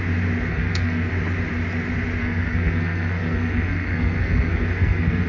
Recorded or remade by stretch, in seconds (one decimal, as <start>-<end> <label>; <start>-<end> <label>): 0.0-0.5 recorded; 0.5-1.1 remade; 1.1-2.2 recorded; 2.2-5.3 remade